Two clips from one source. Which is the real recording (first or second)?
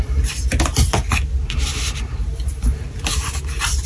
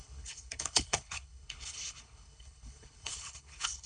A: first